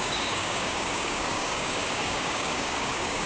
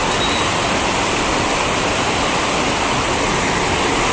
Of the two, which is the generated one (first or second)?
first